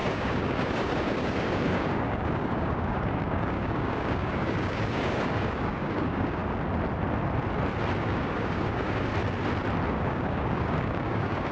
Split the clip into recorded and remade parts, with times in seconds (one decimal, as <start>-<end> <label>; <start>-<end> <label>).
0.0-6.4 remade; 6.4-8.0 recorded; 8.0-9.1 remade; 9.1-9.9 recorded; 9.9-11.5 remade